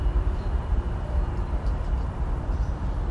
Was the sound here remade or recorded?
remade